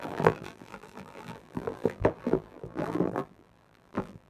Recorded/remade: remade